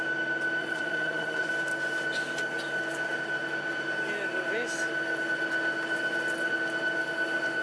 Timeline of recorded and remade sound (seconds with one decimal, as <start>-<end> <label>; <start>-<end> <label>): 0.0-0.6 recorded; 0.6-1.5 remade; 1.5-7.6 recorded